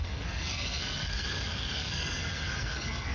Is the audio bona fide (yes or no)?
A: no